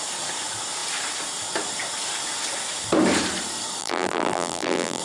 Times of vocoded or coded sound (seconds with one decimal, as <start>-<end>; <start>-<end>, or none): 3.8-5.0